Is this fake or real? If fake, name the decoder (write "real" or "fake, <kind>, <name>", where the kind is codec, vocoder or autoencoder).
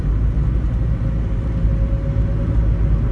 real